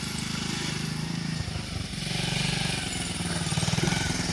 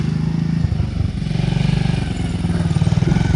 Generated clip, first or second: first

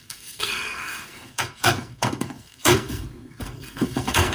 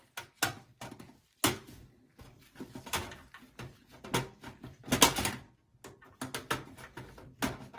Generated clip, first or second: first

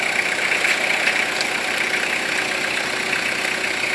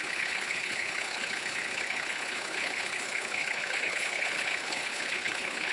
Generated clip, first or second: second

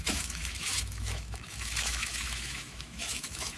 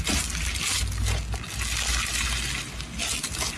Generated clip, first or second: first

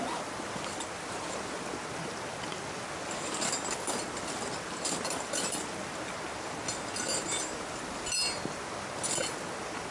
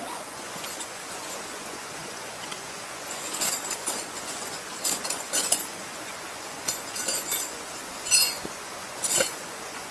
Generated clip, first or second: second